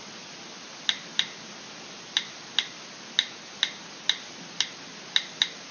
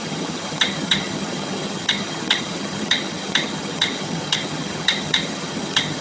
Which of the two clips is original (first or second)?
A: first